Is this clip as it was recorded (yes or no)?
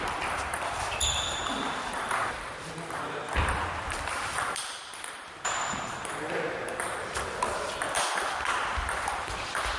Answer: no